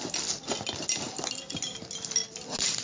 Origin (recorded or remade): recorded